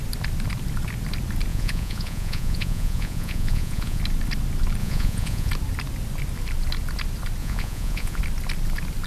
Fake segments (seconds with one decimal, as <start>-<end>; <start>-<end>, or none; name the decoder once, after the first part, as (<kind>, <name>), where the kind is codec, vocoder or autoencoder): 1.5-4.0 (vocoder, Vocos); 4.8-5.5; 7.4-8.2